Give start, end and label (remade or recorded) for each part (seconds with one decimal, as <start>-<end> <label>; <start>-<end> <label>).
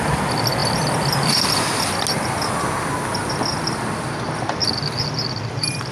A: 0.0-3.5 recorded; 3.5-4.1 remade; 4.1-5.9 recorded